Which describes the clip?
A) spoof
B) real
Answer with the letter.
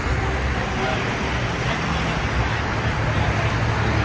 B